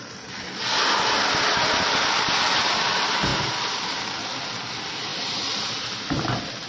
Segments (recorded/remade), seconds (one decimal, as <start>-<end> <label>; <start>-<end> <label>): 0.0-6.7 recorded